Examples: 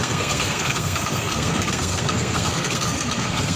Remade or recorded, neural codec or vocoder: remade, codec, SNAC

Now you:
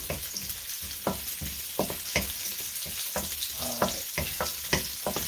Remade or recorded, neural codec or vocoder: recorded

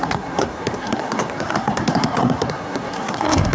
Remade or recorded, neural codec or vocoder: remade, codec, SNAC